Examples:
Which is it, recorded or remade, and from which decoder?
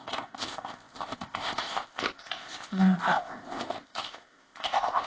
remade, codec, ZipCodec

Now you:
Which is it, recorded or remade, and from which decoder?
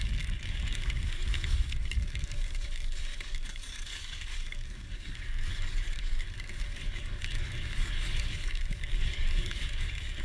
remade, codec, DAC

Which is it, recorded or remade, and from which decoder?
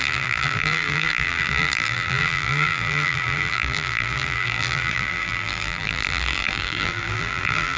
remade, vocoder, BigVGAN v2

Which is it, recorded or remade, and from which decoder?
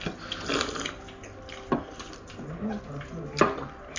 recorded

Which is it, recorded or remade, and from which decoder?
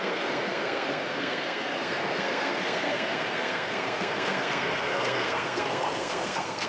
remade, codec, SNAC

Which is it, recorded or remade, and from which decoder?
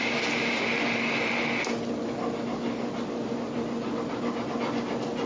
recorded